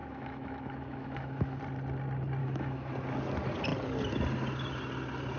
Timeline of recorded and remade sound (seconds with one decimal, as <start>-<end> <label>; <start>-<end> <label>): 0.0-1.6 remade; 1.6-2.4 recorded; 2.4-2.9 remade; 2.9-5.4 recorded